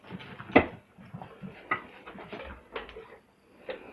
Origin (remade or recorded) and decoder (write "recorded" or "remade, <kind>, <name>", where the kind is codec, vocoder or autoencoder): recorded